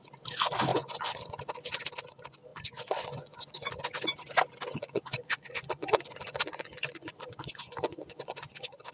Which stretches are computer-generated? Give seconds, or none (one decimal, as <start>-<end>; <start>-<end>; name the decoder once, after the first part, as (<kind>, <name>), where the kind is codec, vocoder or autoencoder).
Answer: 0.7-1.2 (vocoder, Vocos); 2.5-3.7; 4.7-8.9